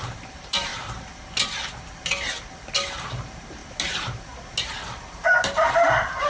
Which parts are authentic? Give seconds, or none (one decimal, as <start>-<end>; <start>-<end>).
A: 0.7-3.2; 3.6-5.1